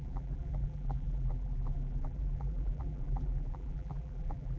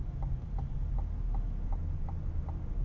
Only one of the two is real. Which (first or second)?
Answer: second